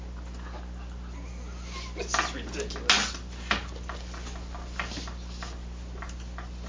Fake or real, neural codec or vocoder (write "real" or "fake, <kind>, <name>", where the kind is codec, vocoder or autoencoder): real